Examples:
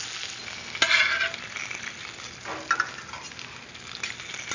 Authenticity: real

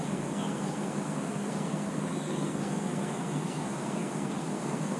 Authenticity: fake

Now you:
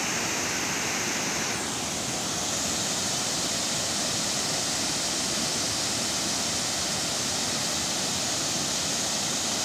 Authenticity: real